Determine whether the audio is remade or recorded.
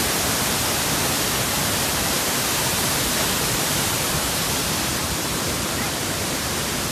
remade